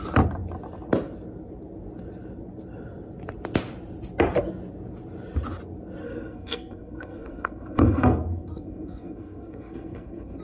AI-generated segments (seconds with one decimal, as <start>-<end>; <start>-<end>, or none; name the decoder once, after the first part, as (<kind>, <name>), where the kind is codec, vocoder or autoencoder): 6.0-10.4 (codec, SNAC)